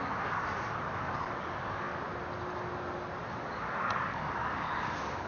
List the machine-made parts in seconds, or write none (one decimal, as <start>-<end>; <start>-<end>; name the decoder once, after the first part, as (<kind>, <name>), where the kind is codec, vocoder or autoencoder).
0.0-1.9 (codec, DAC); 3.3-5.3